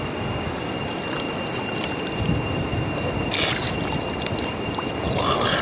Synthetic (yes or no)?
no